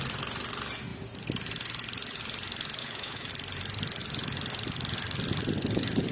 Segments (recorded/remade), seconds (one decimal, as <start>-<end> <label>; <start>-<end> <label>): 0.0-2.8 recorded; 2.8-3.3 remade; 3.3-6.1 recorded